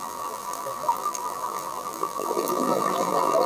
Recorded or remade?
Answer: remade